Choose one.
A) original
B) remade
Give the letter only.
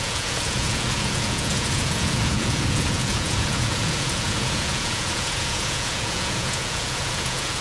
B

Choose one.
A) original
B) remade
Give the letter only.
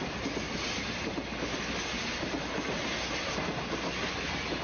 A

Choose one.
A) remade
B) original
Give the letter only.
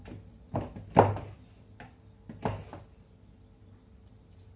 B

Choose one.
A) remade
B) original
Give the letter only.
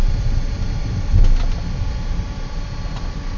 B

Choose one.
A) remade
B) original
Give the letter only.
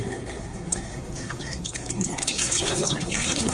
A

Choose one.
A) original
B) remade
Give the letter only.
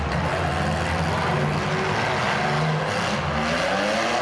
A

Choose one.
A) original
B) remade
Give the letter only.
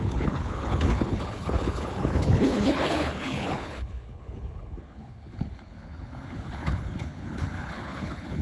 B